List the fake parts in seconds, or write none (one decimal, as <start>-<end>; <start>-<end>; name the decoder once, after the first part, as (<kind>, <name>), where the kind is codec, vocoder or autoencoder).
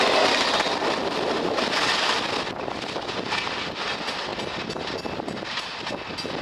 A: none